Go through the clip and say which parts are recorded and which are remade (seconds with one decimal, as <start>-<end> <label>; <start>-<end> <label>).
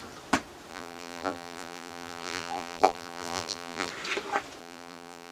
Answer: 0.0-0.7 recorded; 0.7-3.9 remade; 3.9-4.6 recorded; 4.6-5.3 remade